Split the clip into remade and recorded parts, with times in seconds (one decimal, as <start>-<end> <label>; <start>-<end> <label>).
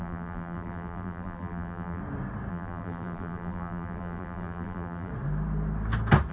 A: 0.0-2.0 remade; 2.0-2.5 recorded; 2.5-5.1 remade; 5.1-6.3 recorded